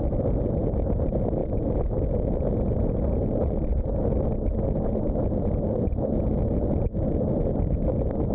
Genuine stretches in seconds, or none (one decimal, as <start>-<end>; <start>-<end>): 0.0-8.3